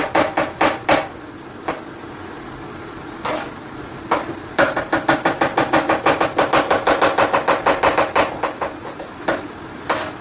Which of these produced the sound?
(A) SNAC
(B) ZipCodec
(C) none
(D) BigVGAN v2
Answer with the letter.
C